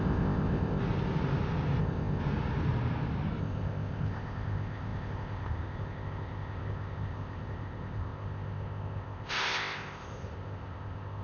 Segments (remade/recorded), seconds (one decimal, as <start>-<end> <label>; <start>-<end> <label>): 0.0-0.8 remade; 0.8-1.8 recorded; 1.8-2.2 remade; 2.2-3.4 recorded; 3.4-11.2 remade